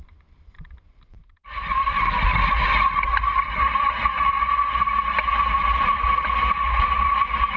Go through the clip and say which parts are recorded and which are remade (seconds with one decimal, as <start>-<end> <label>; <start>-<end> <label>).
0.0-5.6 recorded; 5.6-7.1 remade; 7.1-7.6 recorded